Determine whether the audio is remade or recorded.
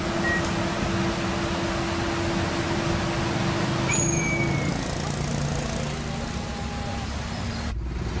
recorded